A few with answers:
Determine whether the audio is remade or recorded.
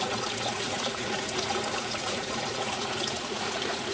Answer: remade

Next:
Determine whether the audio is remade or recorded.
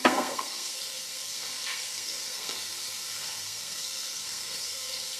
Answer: remade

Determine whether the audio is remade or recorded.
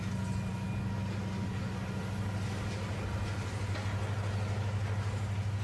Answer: recorded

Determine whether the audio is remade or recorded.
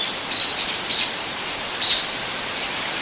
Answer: remade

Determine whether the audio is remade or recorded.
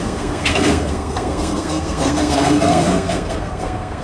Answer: remade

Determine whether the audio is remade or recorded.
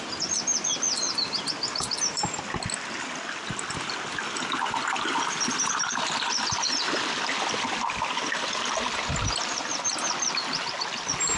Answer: recorded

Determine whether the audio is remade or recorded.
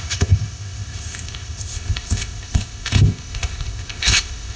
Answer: remade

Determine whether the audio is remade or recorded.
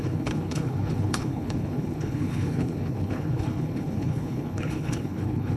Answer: remade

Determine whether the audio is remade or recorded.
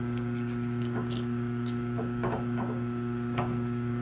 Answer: remade